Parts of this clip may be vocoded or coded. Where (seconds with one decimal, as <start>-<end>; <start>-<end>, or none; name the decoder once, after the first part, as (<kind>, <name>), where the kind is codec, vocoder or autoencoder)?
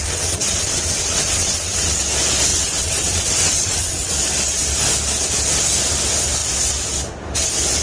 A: 0.0-2.0 (vocoder, WaveNeXt); 2.5-4.1